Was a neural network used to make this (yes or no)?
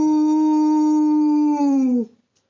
no